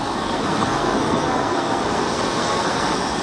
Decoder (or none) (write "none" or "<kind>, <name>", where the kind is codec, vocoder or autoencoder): codec, SNAC